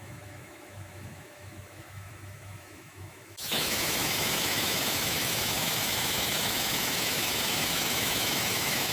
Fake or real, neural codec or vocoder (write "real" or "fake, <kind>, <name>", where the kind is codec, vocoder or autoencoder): fake, autoencoder, DAC-VAE